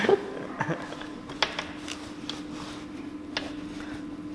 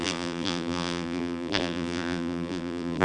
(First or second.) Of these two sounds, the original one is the first